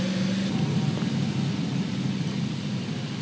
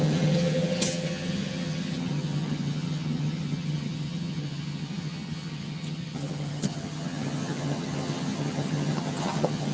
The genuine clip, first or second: first